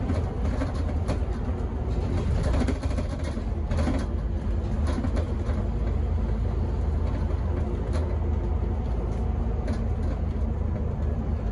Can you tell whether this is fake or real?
real